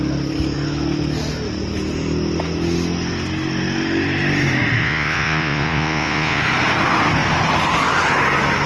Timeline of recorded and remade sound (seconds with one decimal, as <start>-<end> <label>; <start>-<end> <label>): 0.0-4.8 recorded; 4.8-6.4 remade; 6.4-8.7 recorded